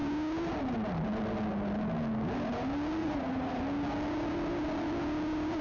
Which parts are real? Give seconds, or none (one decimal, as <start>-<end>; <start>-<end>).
0.0-3.0; 3.6-5.6